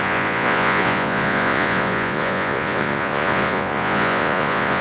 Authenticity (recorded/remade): remade